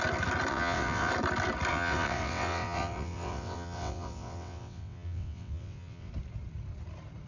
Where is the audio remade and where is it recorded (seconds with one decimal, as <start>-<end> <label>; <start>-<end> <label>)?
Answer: 0.0-0.5 recorded; 0.5-1.1 remade; 1.1-1.7 recorded; 1.7-6.1 remade; 6.1-7.3 recorded